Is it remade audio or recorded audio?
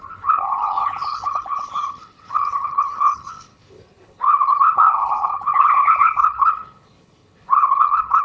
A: remade